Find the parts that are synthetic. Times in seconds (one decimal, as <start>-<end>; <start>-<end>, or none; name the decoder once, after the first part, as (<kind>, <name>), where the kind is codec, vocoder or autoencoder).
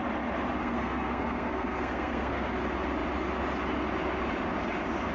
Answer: 0.6-2.6 (codec, SNAC)